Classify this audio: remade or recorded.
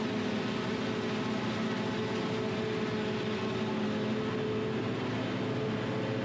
recorded